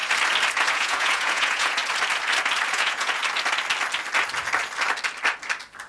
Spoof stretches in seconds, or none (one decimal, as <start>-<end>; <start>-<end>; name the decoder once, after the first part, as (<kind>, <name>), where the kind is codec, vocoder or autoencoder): 0.7-1.8 (vocoder, Vocos); 2.7-3.2

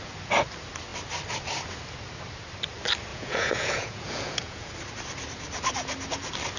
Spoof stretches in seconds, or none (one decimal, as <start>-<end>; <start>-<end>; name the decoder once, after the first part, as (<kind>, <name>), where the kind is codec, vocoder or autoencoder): 3.1-4.7 (vocoder, Vocos)